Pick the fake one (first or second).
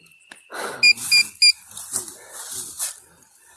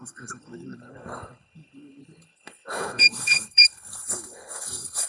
second